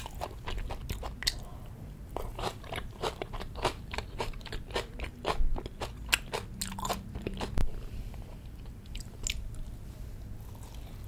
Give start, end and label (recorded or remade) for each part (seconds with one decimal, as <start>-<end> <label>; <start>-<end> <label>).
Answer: 0.0-1.5 recorded; 1.5-4.4 remade; 4.4-7.6 recorded; 7.6-9.2 remade; 9.2-11.1 recorded